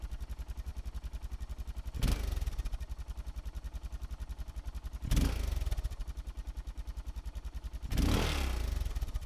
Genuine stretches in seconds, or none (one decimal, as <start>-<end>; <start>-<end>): 0.0-9.3